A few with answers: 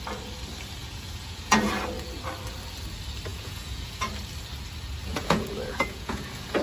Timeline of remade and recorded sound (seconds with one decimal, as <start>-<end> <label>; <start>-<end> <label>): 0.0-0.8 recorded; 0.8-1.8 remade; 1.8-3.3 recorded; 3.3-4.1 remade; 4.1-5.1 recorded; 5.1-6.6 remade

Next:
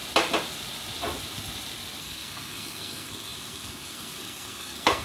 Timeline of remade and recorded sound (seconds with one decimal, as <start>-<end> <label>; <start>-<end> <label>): 0.0-2.0 recorded; 2.0-5.0 remade

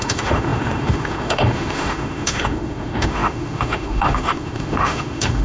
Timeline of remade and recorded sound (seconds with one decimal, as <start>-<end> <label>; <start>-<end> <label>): 0.0-5.4 remade

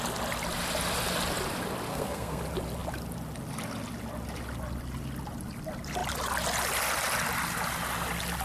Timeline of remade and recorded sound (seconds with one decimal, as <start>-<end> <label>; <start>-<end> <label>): 0.0-1.9 recorded; 1.9-2.4 remade; 2.4-8.4 recorded

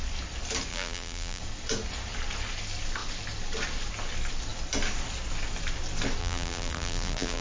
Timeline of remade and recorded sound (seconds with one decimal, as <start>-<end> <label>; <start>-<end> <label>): 0.0-0.7 recorded; 0.7-1.4 remade; 1.4-6.2 recorded; 6.2-7.4 remade